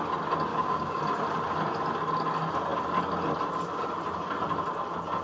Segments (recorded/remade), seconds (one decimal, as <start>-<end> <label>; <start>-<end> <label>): 0.0-0.5 recorded; 0.5-1.0 remade; 1.0-5.2 recorded